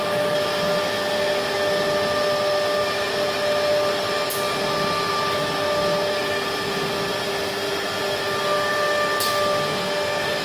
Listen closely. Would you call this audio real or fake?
real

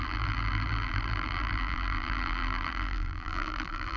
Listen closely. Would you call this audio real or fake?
fake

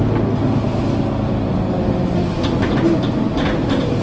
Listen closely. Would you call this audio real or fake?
real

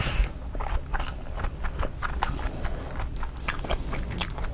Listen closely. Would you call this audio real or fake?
real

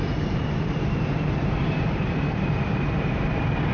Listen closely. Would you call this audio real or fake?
fake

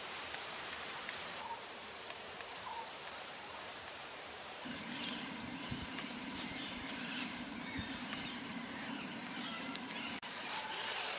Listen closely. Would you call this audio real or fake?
fake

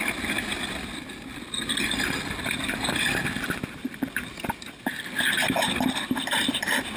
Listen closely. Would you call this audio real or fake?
real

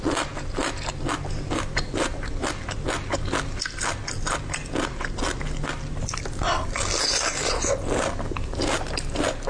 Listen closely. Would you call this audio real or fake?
real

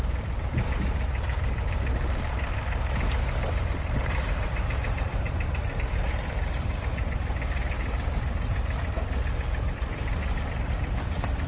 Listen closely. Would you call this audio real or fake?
fake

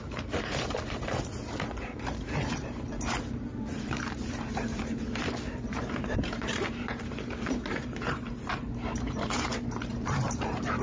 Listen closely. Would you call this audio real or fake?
fake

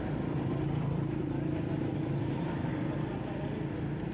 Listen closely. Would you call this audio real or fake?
fake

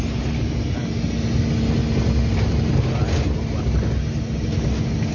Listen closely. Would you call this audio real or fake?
real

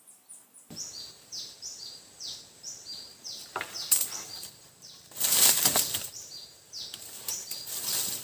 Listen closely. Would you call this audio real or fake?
fake